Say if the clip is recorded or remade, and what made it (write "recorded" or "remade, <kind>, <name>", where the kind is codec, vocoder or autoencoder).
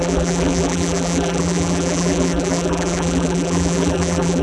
remade, vocoder, BigVGAN v2